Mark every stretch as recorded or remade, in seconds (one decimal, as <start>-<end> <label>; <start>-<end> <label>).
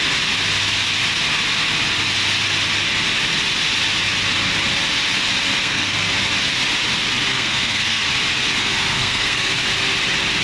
0.0-5.6 recorded; 5.6-6.1 remade; 6.1-7.3 recorded; 7.3-8.0 remade; 8.0-8.6 recorded; 8.6-9.5 remade; 9.5-10.4 recorded